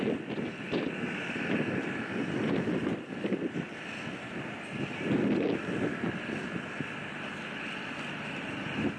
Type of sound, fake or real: real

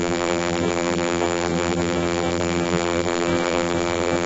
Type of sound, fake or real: fake